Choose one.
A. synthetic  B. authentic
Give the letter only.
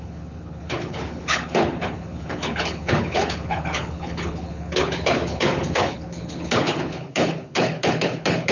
A